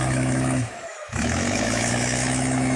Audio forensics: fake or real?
fake